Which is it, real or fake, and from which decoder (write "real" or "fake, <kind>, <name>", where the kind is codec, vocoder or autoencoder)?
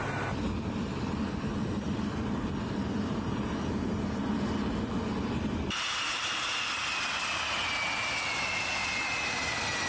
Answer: real